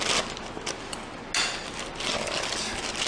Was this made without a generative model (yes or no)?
yes